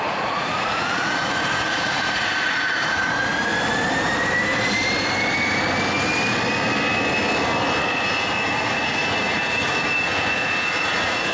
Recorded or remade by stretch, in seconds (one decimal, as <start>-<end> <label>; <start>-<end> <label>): 0.0-3.5 remade; 3.5-7.8 recorded; 7.8-11.3 remade